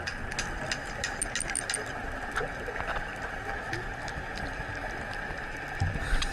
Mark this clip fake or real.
real